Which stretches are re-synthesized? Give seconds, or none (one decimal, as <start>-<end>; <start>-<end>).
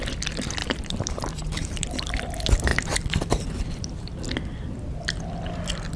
0.6-2.1; 2.7-4.2